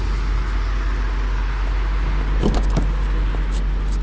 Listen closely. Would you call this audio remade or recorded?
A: recorded